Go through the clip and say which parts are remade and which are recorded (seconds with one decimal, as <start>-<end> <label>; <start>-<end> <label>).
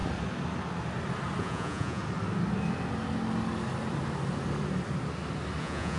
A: 0.0-1.4 recorded; 1.4-2.0 remade; 2.0-5.6 recorded; 5.6-6.0 remade